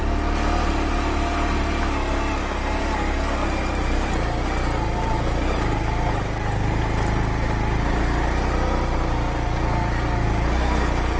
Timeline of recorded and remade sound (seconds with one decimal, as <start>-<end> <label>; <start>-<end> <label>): 0.0-11.2 recorded